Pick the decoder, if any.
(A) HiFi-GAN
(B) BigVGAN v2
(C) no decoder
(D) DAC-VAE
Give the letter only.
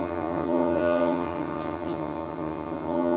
A